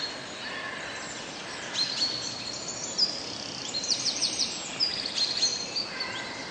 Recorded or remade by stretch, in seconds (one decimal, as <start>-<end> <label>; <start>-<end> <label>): 0.0-3.6 recorded; 3.6-4.7 remade; 4.7-6.5 recorded